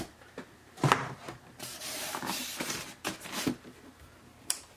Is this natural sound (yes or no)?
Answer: no